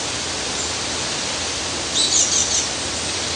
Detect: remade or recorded recorded